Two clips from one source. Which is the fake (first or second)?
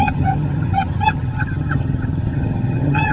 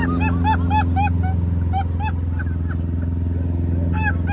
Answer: first